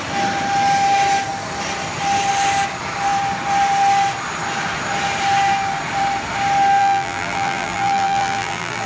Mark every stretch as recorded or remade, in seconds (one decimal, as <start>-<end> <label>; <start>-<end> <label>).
0.0-6.8 recorded; 6.8-8.9 remade